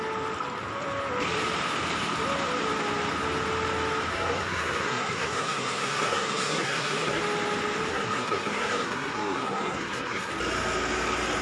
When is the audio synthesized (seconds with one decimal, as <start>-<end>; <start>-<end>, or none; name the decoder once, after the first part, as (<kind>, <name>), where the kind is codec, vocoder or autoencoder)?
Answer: 4.1-7.2 (codec, SNAC); 7.9-10.3